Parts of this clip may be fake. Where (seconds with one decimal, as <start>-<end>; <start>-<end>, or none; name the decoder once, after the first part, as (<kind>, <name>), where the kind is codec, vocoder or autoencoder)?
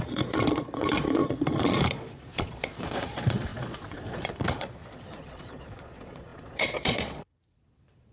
0.0-8.1 (vocoder, Vocos)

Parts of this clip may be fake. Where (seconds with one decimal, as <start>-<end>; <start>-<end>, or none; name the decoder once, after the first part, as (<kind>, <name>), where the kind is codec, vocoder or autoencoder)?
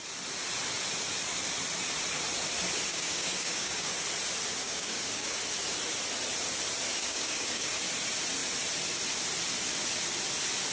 2.9-3.9 (codec, DAC); 4.6-5.4; 7.0-7.7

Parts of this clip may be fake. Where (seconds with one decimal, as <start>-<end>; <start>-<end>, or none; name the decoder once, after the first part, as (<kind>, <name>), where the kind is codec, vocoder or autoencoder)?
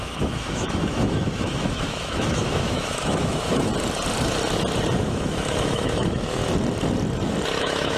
0.0-3.7 (autoencoder, DAC-VAE); 5.0-6.4; 7.6-8.0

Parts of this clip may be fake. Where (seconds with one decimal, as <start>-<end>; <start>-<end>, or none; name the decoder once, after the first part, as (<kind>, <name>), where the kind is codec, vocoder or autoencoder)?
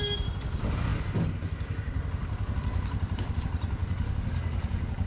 3.8-5.1 (codec, DAC)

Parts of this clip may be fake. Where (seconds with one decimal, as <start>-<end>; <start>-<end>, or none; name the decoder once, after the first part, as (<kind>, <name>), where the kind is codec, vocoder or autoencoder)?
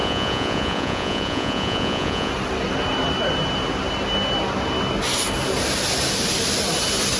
0.0-2.3 (vocoder, Vocos)